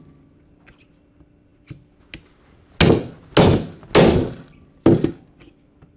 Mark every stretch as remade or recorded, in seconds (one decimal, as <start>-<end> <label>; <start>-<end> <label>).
0.0-6.0 recorded